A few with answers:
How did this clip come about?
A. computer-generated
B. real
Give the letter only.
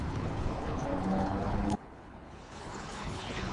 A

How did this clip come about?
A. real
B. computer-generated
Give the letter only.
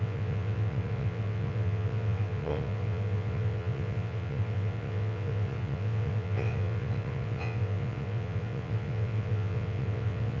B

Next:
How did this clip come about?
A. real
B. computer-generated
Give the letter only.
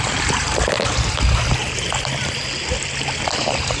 A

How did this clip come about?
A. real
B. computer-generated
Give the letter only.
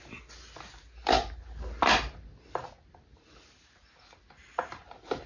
A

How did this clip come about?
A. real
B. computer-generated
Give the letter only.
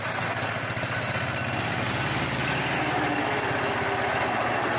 A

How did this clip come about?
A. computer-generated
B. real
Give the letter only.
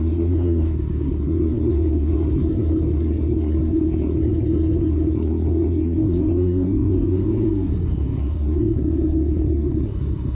A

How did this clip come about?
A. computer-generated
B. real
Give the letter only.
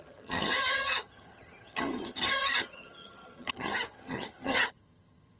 A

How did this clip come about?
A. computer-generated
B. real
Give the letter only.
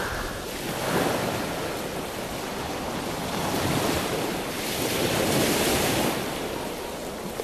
B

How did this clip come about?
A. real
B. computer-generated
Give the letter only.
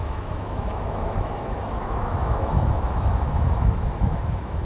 B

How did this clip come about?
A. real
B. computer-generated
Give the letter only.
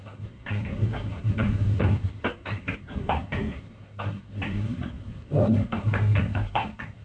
B